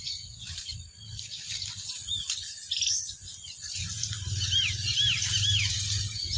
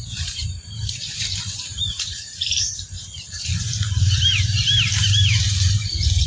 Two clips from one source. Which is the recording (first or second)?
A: first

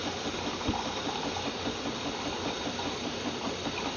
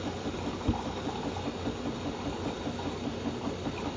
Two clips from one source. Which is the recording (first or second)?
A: second